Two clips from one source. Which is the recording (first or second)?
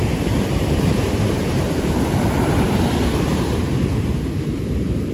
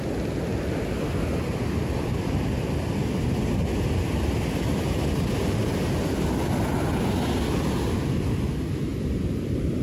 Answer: second